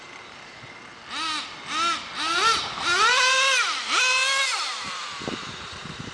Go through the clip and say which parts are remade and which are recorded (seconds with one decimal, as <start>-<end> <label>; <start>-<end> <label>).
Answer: 0.0-0.9 remade; 0.9-4.6 recorded; 4.6-6.1 remade